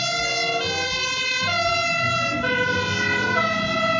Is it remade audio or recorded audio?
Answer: recorded